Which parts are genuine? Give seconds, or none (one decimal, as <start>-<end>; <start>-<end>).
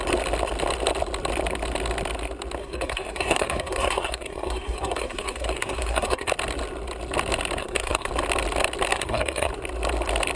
0.0-2.6; 6.3-7.6; 8.1-8.9; 9.5-10.4